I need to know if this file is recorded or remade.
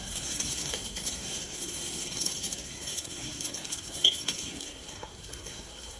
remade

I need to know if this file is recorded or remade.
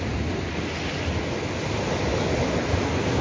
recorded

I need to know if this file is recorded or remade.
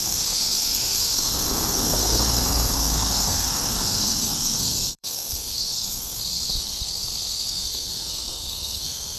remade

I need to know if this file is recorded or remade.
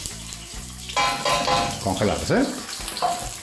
recorded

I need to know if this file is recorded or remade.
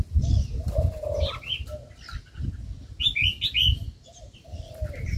recorded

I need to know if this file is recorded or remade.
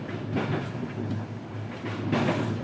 recorded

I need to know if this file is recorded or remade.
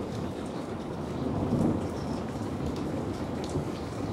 remade